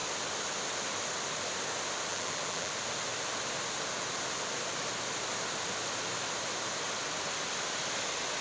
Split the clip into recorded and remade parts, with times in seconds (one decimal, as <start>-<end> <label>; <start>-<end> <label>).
0.0-2.1 recorded; 2.1-2.7 remade; 2.7-8.4 recorded

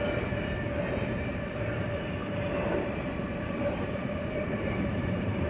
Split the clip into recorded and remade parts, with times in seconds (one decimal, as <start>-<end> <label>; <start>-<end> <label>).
0.0-2.2 recorded; 2.2-5.5 remade

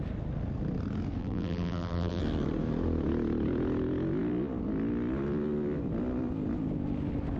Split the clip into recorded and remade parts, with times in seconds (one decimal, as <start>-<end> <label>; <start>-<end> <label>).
0.0-1.2 recorded; 1.2-2.2 remade; 2.2-7.4 recorded

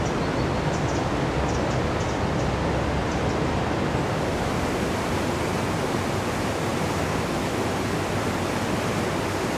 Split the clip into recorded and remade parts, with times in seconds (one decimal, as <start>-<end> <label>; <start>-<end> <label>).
0.0-3.0 recorded; 3.0-5.8 remade; 5.8-9.6 recorded

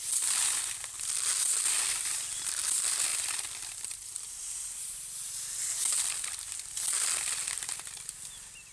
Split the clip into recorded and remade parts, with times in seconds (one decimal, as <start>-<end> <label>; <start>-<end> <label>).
0.0-3.1 recorded; 3.1-5.7 remade; 5.7-8.7 recorded